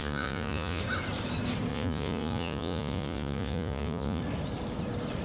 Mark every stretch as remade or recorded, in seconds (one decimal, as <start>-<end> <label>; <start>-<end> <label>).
0.0-0.8 remade; 0.8-1.7 recorded; 1.7-4.2 remade; 4.2-5.2 recorded